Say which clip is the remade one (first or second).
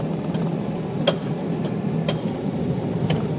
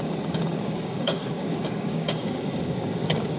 second